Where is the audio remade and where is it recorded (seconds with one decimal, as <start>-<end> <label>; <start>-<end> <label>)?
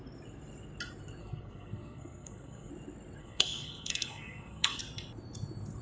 0.0-1.2 recorded; 1.2-2.7 remade; 2.7-3.2 recorded; 3.2-4.8 remade; 4.8-5.8 recorded